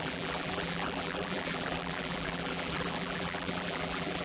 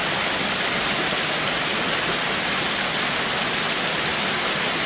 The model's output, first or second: first